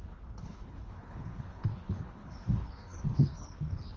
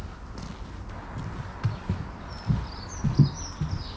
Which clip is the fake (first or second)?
first